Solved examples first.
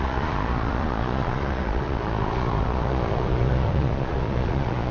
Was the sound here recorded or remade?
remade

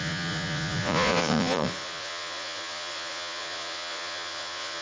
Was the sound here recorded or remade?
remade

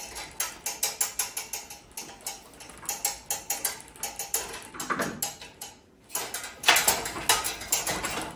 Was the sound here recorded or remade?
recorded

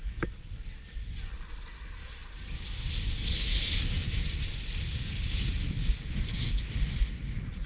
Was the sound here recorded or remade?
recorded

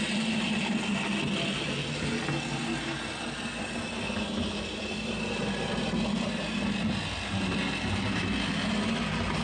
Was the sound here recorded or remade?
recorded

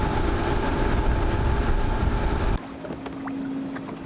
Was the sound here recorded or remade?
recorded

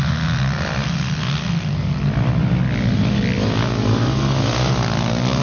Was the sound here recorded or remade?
recorded